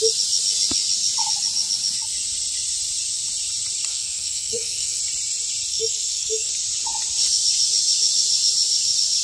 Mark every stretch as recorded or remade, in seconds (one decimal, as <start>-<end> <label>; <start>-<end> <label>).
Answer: 0.0-3.9 recorded; 3.9-5.0 remade; 5.0-5.7 recorded; 5.7-6.5 remade; 6.5-9.2 recorded